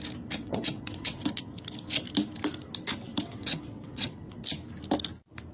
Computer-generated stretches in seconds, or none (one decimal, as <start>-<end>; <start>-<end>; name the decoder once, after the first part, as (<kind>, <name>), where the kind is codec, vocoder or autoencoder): 0.4-1.2 (vocoder, WaveNeXt); 3.1-4.3

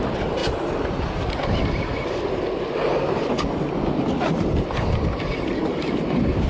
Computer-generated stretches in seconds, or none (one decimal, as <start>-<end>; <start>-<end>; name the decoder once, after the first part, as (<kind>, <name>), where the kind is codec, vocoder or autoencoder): none

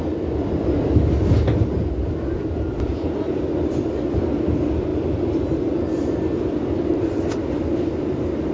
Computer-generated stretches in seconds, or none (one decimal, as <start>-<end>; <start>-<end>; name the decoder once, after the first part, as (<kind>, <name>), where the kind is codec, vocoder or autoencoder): none

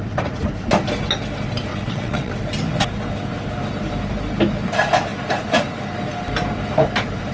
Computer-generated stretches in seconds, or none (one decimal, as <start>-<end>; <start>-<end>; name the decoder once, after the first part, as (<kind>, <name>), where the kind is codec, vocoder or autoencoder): 1.7-2.3 (vocoder, WaveNeXt)

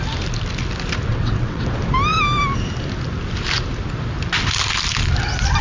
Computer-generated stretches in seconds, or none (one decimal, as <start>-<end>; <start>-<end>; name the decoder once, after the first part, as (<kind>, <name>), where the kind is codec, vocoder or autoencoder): 1.1-1.6 (vocoder, WaveNeXt)

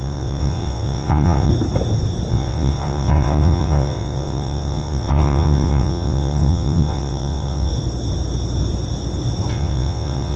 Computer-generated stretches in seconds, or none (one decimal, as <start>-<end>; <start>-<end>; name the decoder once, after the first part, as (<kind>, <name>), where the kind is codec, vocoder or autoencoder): 0.0-1.5 (vocoder, WaveNeXt); 2.3-7.7; 9.5-10.4

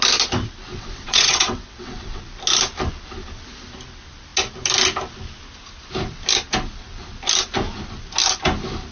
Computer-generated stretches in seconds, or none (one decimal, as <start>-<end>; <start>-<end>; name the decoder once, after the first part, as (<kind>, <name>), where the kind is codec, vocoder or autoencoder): 0.7-2.2 (vocoder, WaveNeXt)

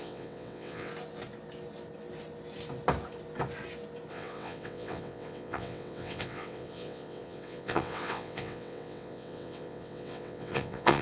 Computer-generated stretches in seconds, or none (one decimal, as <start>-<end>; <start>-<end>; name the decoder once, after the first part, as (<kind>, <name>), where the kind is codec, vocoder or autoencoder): 0.0-0.9 (vocoder, WaveNeXt); 4.1-11.0